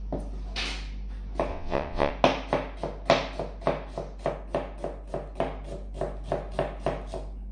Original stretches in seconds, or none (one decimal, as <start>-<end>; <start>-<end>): 0.0-1.5; 2.1-7.5